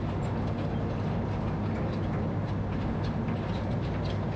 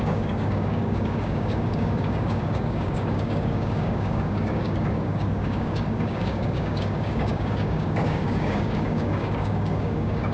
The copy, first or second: second